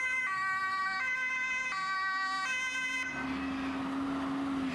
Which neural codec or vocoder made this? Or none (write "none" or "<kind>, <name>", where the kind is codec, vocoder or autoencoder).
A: none